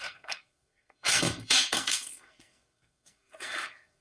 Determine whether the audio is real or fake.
fake